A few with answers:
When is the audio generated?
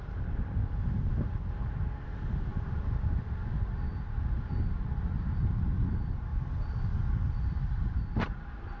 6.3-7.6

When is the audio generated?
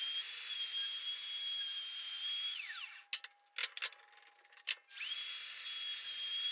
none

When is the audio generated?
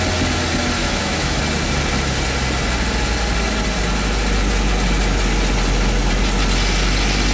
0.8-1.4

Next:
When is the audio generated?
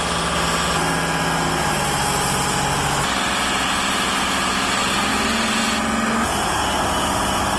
none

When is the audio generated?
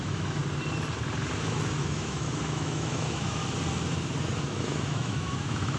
0.0-0.4; 1.4-3.4; 4.4-5.8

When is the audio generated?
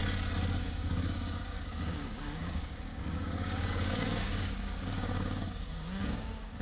0.6-6.6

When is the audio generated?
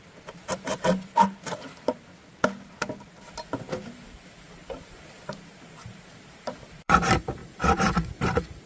0.0-2.1; 3.9-4.6; 5.3-8.7